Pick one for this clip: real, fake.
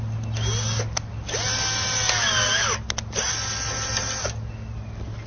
real